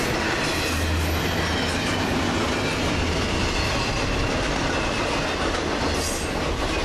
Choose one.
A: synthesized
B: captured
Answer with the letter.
B